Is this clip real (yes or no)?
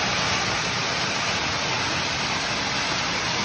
yes